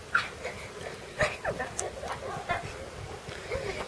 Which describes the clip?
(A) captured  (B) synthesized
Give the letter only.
A